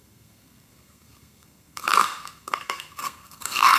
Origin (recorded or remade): remade